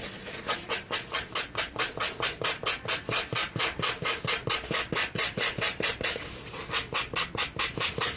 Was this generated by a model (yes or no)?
no